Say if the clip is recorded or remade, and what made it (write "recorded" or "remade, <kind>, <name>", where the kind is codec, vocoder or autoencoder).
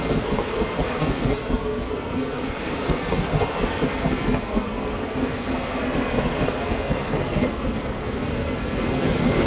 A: remade, codec, SNAC